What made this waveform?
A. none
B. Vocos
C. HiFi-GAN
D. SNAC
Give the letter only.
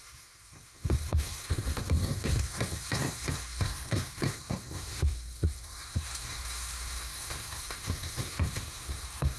D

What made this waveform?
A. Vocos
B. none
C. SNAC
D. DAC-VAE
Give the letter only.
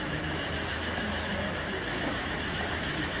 D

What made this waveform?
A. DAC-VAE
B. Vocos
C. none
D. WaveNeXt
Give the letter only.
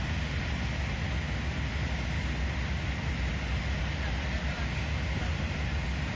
C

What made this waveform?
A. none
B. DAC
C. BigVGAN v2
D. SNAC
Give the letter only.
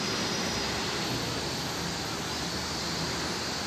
A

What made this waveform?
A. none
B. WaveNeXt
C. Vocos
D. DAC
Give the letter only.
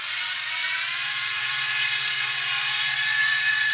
C